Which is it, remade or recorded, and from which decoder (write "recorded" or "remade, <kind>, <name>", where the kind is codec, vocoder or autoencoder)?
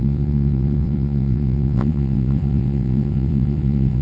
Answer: remade, vocoder, WaveNeXt